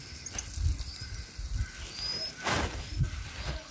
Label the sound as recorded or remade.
recorded